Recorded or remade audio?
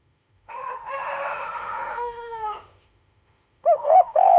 remade